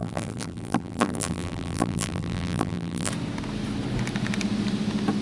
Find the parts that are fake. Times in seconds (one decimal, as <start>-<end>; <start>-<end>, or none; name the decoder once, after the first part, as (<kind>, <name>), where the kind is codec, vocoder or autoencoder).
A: 0.0-3.1 (vocoder, BigVGAN v2)